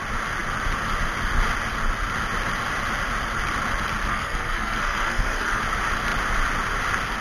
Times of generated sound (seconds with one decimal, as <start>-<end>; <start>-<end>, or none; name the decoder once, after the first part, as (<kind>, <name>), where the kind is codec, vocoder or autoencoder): 4.1-5.6 (codec, SNAC)